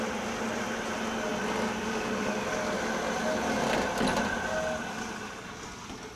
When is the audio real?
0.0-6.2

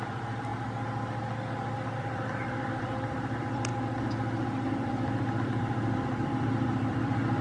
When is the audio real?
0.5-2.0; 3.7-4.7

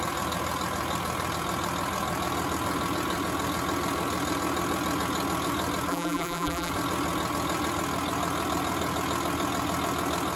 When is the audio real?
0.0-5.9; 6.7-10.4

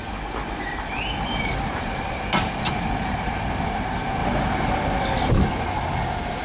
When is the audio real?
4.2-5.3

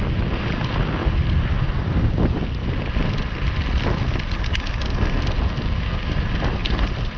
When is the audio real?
0.0-1.0; 2.2-2.6; 3.5-6.6

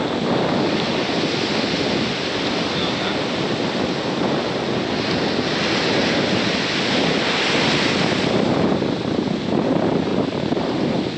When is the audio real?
0.0-11.2